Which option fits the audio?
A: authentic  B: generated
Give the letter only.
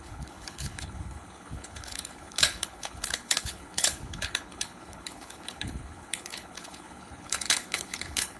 B